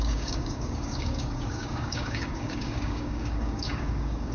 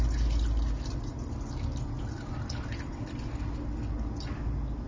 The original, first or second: second